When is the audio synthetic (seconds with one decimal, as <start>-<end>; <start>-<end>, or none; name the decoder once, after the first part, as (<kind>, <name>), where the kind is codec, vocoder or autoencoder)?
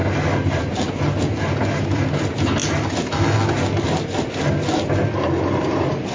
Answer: none